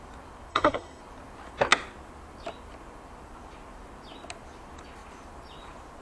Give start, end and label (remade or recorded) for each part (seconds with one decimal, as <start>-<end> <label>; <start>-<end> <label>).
0.0-0.5 recorded; 0.5-1.0 remade; 1.0-6.0 recorded